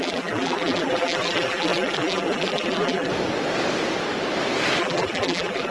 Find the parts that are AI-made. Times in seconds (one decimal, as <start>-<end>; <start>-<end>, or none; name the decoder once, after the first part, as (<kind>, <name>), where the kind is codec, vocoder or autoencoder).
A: 0.0-3.1 (vocoder, BigVGAN v2); 4.8-5.7